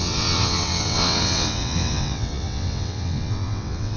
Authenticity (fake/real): fake